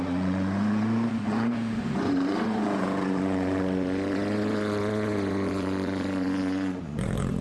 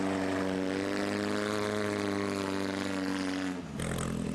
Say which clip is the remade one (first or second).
first